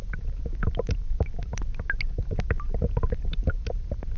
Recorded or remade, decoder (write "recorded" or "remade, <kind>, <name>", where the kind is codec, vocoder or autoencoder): recorded